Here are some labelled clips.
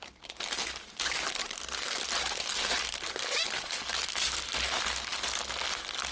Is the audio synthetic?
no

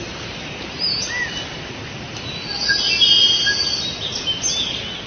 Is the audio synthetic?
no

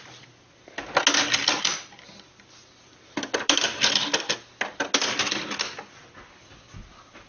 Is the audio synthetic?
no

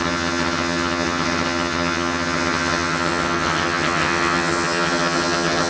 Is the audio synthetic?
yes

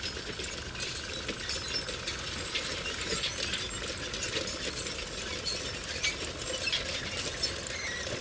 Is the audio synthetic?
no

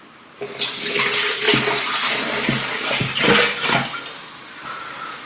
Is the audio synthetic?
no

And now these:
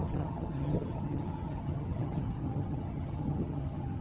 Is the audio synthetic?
yes